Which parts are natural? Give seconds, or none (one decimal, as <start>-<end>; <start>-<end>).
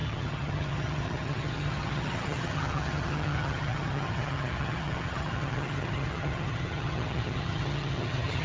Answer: none